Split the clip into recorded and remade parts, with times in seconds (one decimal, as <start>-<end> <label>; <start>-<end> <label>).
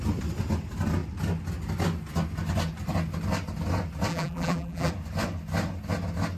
0.0-4.1 recorded; 4.1-4.9 remade; 4.9-6.4 recorded